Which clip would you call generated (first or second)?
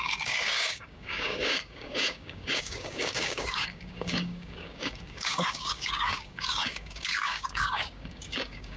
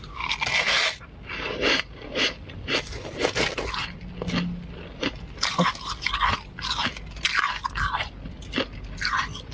first